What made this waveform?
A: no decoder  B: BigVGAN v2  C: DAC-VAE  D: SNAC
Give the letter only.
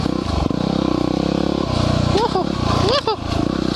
A